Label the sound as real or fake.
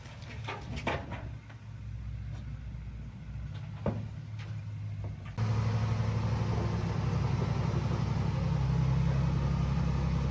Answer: real